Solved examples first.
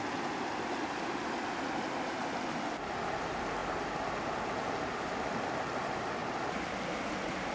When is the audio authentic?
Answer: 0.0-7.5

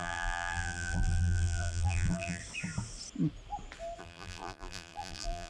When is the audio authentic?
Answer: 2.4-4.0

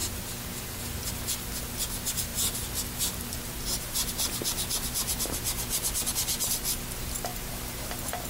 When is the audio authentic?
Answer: 0.0-8.3